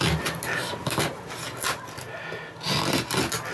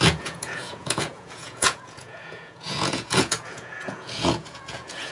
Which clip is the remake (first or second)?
second